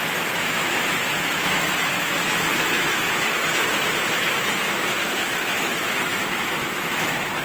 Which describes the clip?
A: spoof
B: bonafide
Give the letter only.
A